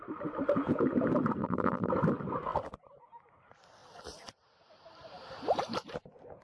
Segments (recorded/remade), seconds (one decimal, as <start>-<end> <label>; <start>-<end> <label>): 0.0-1.4 recorded; 1.4-1.9 remade; 1.9-6.4 recorded